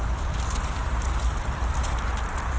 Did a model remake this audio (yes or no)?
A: no